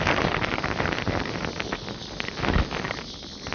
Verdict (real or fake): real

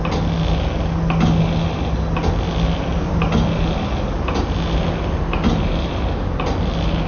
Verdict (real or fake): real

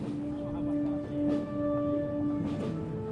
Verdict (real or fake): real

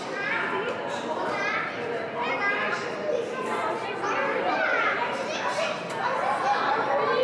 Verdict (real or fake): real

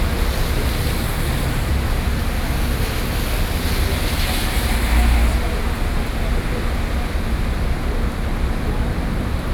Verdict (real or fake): real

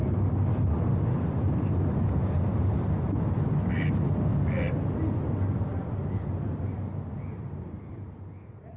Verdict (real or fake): real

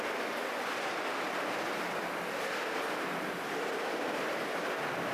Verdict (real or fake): real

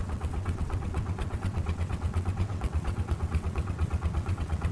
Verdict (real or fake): fake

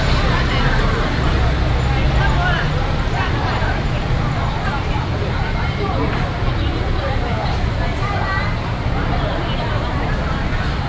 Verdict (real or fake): real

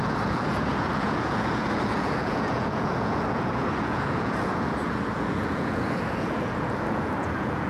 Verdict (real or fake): fake